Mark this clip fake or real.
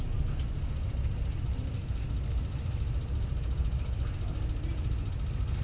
real